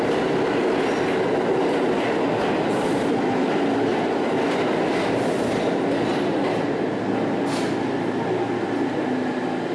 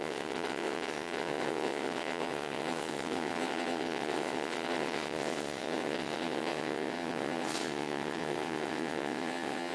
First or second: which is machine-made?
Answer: second